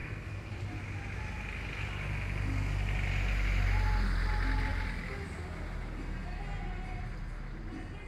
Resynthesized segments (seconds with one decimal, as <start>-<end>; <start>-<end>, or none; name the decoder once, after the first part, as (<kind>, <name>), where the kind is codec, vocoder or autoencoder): 0.0-0.5 (codec, SNAC)